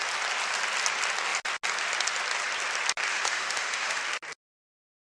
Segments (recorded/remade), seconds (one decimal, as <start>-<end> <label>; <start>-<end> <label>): 0.0-3.1 recorded; 3.1-4.0 remade; 4.0-5.0 recorded